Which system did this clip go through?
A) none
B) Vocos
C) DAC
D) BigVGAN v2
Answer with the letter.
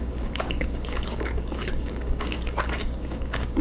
C